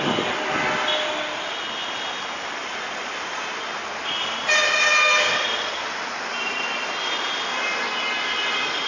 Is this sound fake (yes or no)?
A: no